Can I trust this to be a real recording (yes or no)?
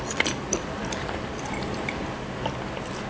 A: no